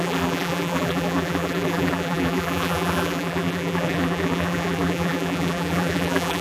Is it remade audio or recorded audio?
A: remade